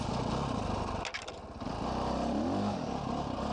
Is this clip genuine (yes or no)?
yes